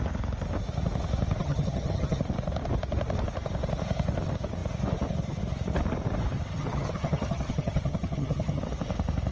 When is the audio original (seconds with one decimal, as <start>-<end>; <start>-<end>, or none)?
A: 0.0-1.4; 2.2-6.5; 8.6-9.3

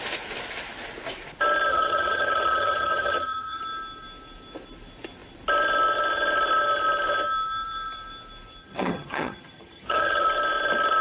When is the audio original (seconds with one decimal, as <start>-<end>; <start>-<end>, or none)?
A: 0.0-1.7; 3.6-8.6; 10.3-11.0

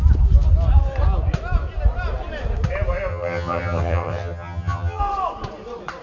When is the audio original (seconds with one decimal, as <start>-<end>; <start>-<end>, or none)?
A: 0.0-3.1; 5.0-6.0

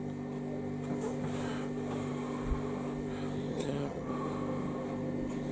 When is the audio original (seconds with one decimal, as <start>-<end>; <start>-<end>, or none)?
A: 0.0-3.5; 4.1-5.5

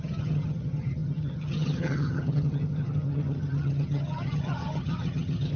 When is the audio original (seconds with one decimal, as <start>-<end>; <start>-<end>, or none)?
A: none

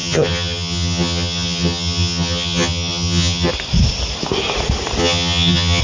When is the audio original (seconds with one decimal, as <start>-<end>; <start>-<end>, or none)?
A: 3.5-5.0

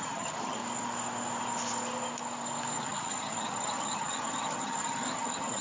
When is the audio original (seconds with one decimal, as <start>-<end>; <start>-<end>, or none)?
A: 0.6-2.8

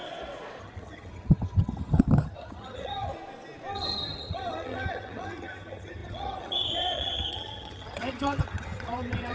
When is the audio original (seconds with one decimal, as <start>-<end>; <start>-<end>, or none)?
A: 0.0-0.6; 3.1-3.7